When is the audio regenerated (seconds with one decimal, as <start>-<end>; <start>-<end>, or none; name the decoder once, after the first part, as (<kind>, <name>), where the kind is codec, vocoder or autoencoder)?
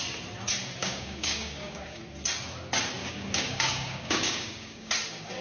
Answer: 0.8-2.0 (codec, DAC); 3.0-4.9